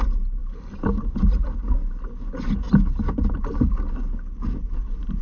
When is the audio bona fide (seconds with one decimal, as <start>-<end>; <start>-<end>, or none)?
0.0-5.2